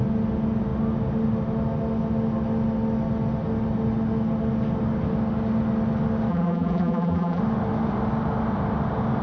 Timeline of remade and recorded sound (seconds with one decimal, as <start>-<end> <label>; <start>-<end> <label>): 0.0-6.3 recorded; 6.3-7.4 remade; 7.4-9.2 recorded